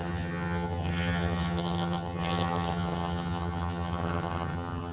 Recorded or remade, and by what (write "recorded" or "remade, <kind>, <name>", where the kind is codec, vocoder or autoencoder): remade, vocoder, HiFi-GAN